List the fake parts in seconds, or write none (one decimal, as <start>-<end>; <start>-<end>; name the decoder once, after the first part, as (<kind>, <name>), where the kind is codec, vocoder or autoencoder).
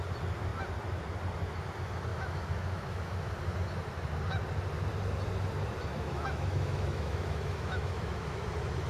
2.1-3.3 (autoencoder, DAC-VAE); 5.9-8.5